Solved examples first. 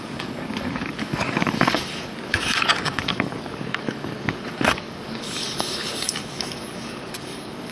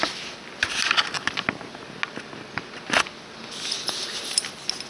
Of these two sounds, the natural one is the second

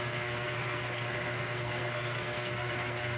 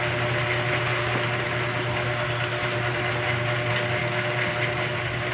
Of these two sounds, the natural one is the second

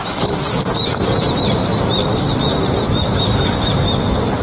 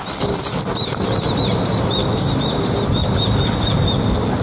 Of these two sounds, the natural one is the second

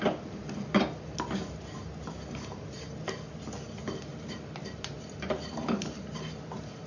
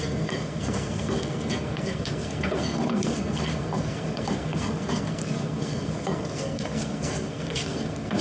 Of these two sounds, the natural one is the first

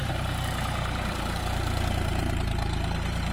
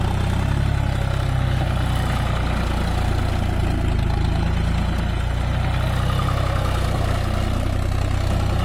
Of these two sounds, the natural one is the second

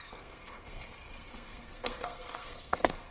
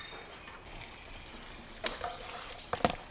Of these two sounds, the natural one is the second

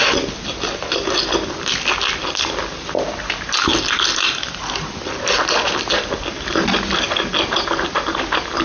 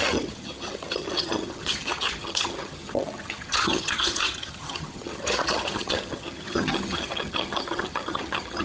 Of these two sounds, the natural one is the first